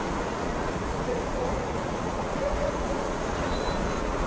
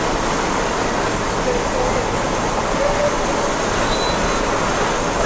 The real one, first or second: second